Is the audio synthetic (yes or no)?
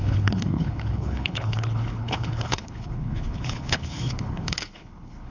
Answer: yes